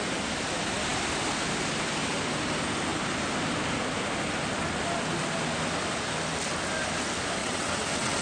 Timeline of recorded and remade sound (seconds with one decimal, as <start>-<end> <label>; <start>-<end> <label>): 0.0-7.4 recorded; 7.4-8.2 remade